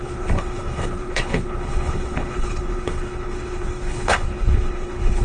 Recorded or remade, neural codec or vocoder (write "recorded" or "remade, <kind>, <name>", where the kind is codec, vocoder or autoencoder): remade, codec, HILCodec